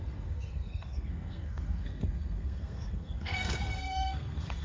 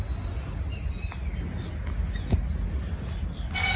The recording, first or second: second